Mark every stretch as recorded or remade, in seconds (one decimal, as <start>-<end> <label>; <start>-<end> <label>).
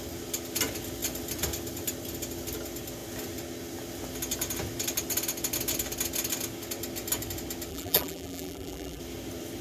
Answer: 0.0-7.7 recorded; 7.7-9.0 remade; 9.0-9.6 recorded